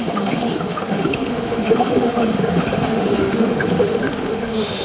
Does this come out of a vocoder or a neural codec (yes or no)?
yes